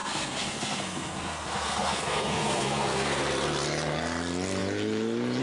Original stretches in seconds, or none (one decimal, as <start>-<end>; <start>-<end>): 3.2-5.4